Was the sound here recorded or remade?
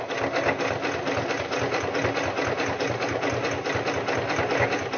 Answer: recorded